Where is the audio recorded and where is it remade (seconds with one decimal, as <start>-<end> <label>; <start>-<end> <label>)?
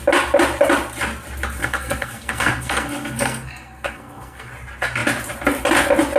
0.0-1.6 recorded; 1.6-4.5 remade; 4.5-6.2 recorded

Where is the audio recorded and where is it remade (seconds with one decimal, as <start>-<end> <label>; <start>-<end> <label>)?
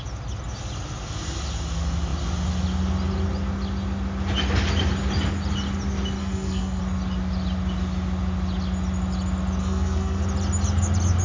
0.0-6.2 recorded; 6.2-6.8 remade; 6.8-9.6 recorded; 9.6-10.2 remade; 10.2-11.2 recorded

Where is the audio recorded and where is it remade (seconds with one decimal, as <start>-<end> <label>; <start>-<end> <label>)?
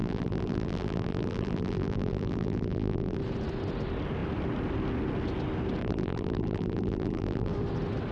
0.0-3.2 remade; 3.2-5.8 recorded; 5.8-7.5 remade; 7.5-8.1 recorded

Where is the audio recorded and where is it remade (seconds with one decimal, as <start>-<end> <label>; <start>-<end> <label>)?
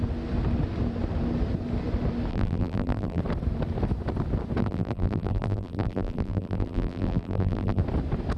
0.0-2.3 recorded; 2.3-3.2 remade; 3.2-4.6 recorded; 4.6-7.8 remade; 7.8-8.4 recorded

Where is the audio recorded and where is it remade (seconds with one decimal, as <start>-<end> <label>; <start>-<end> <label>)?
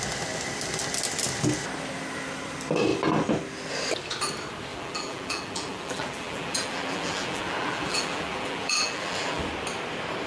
0.0-4.7 recorded; 4.7-9.4 remade; 9.4-10.3 recorded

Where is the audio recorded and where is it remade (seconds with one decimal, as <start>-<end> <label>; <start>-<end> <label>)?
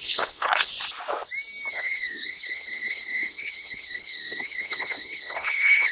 0.0-0.7 remade; 0.7-1.7 recorded; 1.7-5.9 remade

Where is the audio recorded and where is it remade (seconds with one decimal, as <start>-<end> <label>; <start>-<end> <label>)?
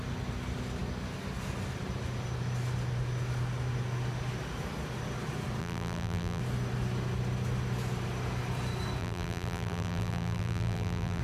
0.0-5.6 recorded; 5.6-6.4 remade; 6.4-9.0 recorded; 9.0-11.2 remade